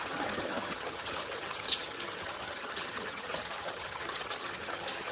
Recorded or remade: remade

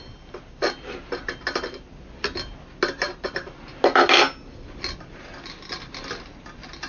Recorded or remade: recorded